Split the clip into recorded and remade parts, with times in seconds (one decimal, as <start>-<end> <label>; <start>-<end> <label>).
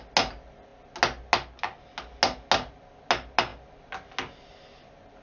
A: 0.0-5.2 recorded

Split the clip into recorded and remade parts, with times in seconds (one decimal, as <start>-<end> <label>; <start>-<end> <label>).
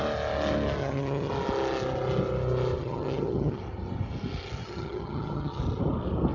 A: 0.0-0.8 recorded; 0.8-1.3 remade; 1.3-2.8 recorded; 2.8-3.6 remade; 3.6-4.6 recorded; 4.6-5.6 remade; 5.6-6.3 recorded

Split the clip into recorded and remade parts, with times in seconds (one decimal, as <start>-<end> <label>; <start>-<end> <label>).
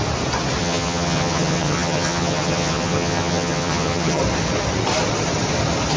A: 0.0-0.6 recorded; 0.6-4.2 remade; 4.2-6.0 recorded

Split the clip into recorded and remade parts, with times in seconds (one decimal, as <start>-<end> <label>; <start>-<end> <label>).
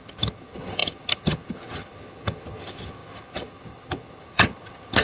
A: 0.0-5.0 remade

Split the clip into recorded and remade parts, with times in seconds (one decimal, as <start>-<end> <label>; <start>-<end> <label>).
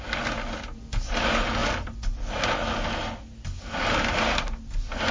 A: 0.0-5.1 recorded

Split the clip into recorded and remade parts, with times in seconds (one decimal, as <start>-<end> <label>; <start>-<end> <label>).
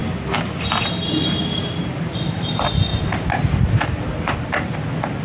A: 0.0-5.2 recorded